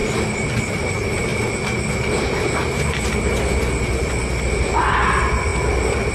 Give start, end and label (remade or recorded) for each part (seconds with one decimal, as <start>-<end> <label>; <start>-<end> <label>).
0.0-6.1 recorded